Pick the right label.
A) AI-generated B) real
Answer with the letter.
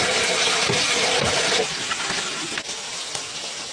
B